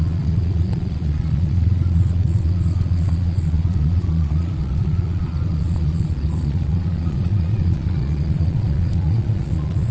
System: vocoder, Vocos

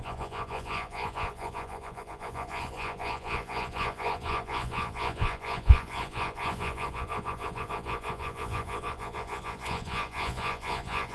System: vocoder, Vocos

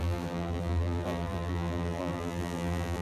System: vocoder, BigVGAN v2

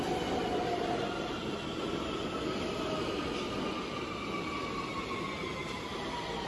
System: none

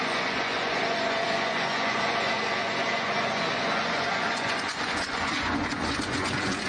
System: vocoder, Vocos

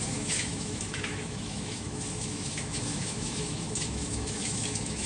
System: autoencoder, DAC-VAE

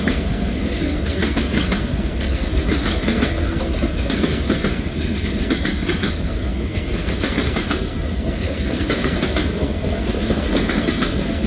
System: codec, SNAC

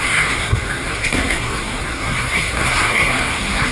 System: codec, SNAC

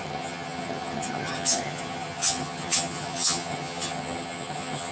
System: vocoder, HiFi-GAN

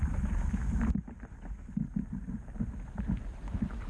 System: none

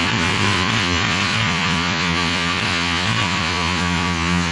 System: vocoder, Vocos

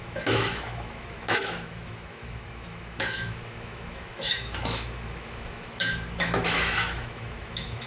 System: autoencoder, DAC-VAE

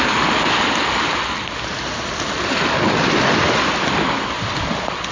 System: none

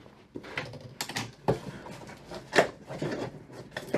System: none